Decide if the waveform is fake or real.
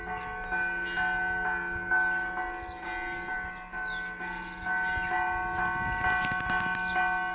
real